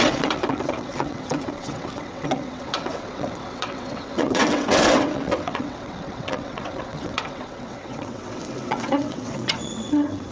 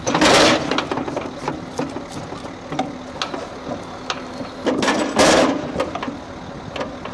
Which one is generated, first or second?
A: first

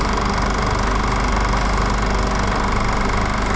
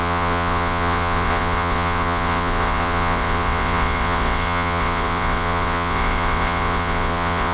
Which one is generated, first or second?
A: second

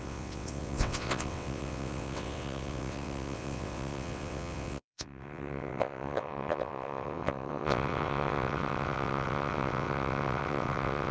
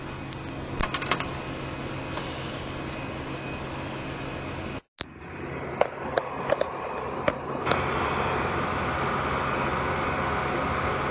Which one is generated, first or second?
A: first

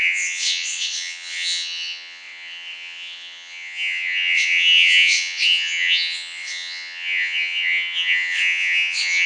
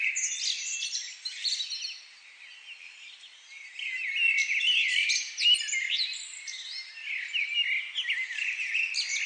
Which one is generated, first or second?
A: first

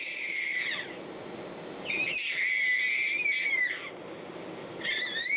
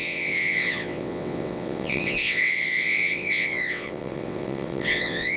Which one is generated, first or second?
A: second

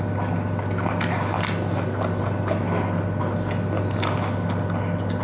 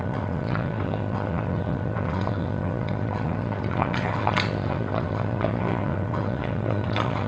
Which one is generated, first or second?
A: second